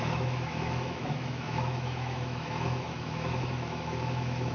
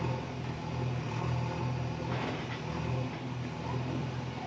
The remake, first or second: first